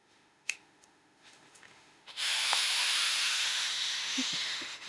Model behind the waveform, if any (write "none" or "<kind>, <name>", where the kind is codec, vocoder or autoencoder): autoencoder, DAC-VAE